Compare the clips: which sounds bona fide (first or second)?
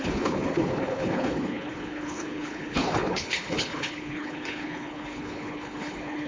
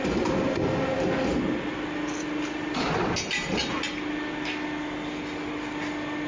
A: second